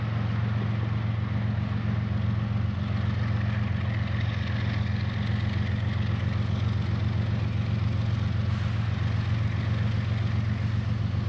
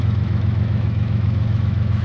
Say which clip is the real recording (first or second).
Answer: first